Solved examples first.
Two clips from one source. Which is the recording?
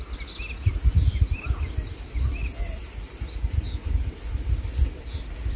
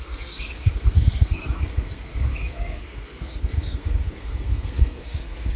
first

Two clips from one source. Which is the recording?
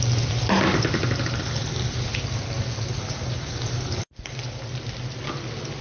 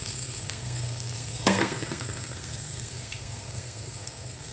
first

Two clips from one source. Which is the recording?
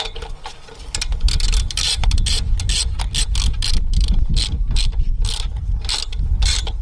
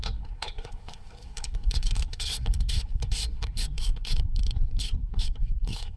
first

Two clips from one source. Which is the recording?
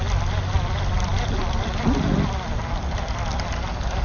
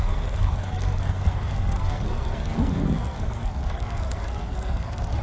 first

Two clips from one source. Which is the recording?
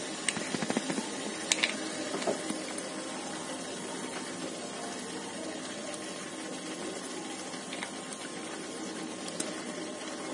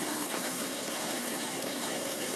first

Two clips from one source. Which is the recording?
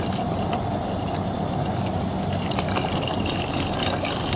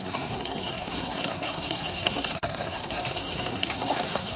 first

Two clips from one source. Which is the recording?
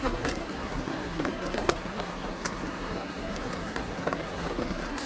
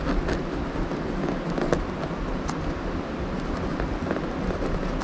second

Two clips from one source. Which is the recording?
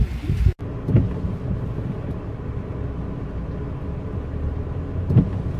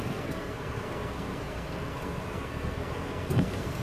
first